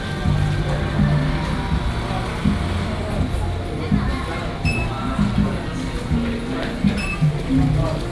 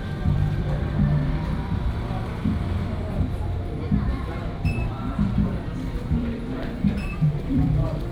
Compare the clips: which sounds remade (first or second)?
second